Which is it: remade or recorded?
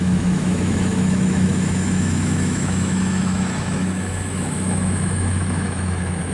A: remade